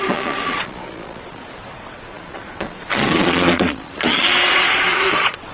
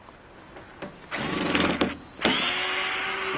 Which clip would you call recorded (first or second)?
second